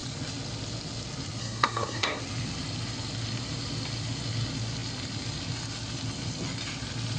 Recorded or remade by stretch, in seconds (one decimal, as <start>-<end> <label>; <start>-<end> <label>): 0.0-1.4 recorded; 1.4-2.2 remade; 2.2-7.2 recorded